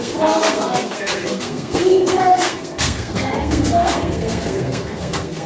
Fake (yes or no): yes